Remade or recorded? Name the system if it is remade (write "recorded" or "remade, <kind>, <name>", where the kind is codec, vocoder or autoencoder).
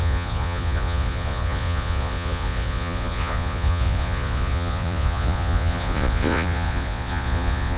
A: remade, vocoder, Vocos